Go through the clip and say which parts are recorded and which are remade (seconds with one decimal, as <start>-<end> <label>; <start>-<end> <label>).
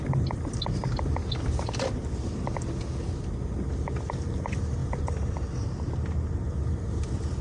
0.0-7.4 recorded